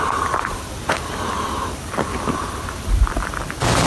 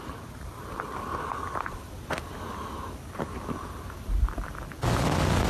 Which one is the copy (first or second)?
first